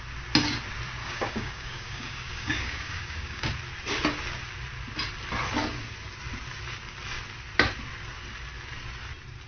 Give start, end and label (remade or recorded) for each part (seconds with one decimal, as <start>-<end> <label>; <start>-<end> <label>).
0.0-1.0 recorded; 1.0-3.5 remade; 3.5-9.5 recorded